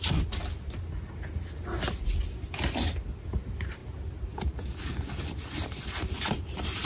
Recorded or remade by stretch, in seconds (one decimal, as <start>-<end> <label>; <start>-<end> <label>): 0.0-6.8 recorded